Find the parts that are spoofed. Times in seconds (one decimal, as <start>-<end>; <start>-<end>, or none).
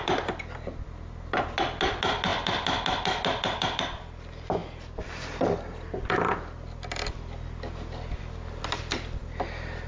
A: none